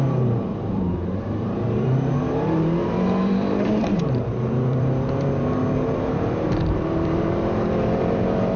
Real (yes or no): no